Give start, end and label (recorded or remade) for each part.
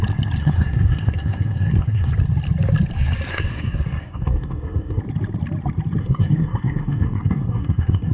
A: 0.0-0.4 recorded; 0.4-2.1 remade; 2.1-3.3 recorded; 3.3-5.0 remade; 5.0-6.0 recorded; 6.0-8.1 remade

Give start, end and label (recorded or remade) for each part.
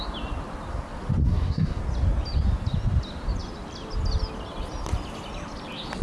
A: 0.0-1.2 recorded; 1.2-1.8 remade; 1.8-6.0 recorded